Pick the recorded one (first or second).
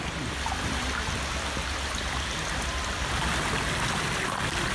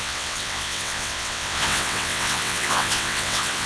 first